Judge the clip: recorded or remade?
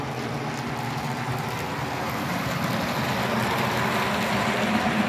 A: recorded